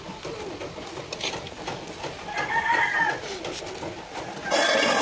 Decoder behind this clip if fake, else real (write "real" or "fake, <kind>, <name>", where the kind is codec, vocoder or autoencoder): real